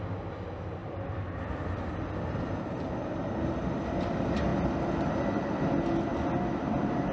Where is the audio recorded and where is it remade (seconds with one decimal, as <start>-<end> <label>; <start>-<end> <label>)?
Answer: 0.0-7.1 recorded